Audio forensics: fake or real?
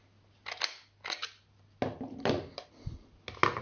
real